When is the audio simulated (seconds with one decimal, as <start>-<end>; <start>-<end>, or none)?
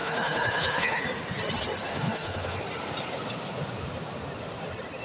0.0-1.0; 1.9-2.6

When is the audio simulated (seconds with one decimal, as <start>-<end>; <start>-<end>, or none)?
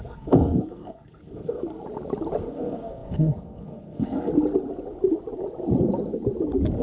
0.0-1.6; 2.4-4.3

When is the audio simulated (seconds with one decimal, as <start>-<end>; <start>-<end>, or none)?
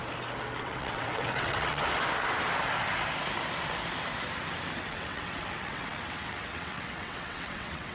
0.6-1.8; 4.8-7.9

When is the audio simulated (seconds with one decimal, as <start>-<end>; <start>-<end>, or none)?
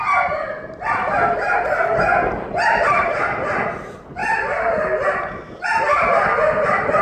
none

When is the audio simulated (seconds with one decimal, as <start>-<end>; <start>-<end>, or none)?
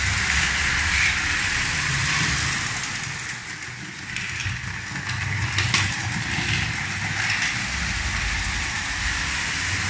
none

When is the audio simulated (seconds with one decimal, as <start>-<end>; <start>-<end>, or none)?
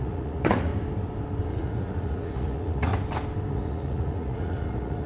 0.0-0.7; 1.5-2.9; 3.5-5.1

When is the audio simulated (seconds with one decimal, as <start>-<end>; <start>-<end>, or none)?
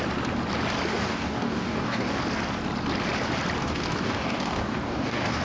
0.9-2.2; 3.6-5.4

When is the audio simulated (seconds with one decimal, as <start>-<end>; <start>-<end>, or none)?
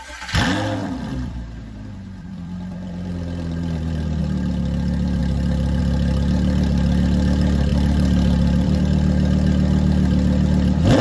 0.8-4.2; 5.2-5.8; 7.7-8.8